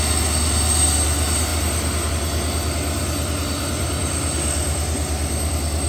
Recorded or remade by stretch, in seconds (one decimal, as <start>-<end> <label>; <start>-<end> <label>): 0.0-5.9 recorded